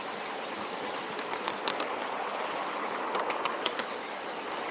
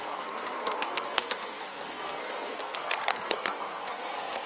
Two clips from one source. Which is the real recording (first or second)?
first